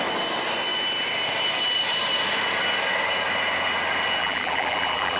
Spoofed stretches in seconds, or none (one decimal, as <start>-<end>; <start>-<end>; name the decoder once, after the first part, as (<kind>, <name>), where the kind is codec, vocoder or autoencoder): 4.2-5.2 (vocoder, BigVGAN v2)